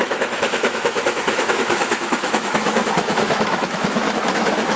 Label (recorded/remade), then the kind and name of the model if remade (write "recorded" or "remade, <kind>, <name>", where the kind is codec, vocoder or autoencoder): remade, autoencoder, DAC-VAE